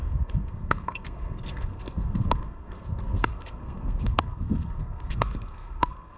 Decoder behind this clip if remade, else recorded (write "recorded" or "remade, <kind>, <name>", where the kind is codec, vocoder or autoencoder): remade, codec, SNAC